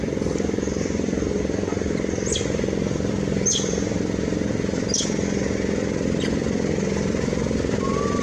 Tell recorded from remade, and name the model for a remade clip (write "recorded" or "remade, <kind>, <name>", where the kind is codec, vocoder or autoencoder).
recorded